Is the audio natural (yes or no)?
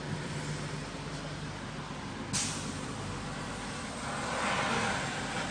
yes